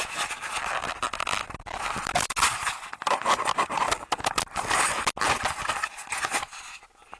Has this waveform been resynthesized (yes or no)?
no